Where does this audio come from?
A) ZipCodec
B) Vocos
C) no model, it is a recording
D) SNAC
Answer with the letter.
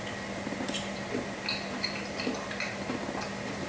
C